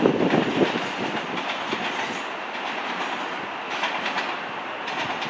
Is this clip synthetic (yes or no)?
no